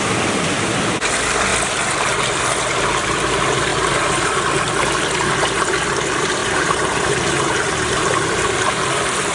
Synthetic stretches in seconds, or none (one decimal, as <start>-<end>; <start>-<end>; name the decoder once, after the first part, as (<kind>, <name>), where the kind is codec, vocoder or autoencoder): 3.7-4.4 (vocoder, BigVGAN v2); 6.4-9.3

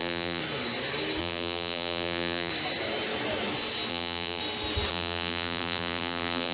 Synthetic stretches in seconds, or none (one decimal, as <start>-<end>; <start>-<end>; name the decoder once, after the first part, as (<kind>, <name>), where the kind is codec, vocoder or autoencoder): 0.0-0.4 (vocoder, BigVGAN v2); 1.2-2.5; 3.9-4.4; 4.9-6.5

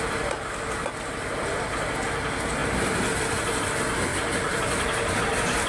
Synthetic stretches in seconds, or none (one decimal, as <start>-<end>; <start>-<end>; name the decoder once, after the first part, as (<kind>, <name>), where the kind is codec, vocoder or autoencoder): 2.6-3.6 (vocoder, BigVGAN v2)

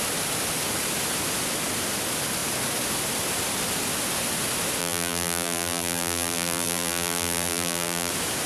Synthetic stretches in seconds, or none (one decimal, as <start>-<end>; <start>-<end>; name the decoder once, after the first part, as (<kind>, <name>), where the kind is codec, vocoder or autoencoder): 4.8-8.1 (vocoder, BigVGAN v2)

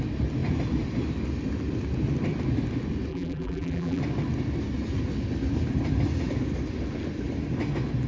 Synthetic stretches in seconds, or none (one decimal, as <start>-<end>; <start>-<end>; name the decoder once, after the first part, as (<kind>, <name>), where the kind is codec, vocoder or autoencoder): 3.1-4.0 (vocoder, BigVGAN v2)

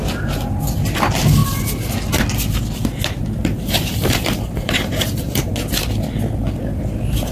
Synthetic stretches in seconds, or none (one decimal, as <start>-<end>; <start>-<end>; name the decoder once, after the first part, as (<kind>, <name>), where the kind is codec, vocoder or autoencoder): 3.4-5.5 (vocoder, BigVGAN v2)

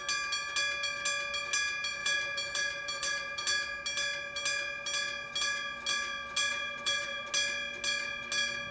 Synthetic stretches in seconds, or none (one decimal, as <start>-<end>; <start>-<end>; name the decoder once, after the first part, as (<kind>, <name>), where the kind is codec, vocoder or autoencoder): 2.0-3.4 (vocoder, BigVGAN v2); 6.5-7.3

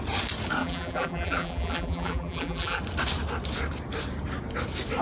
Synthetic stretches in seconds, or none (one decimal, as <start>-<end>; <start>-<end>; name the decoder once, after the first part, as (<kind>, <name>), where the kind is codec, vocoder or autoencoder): 0.6-2.8 (vocoder, BigVGAN v2)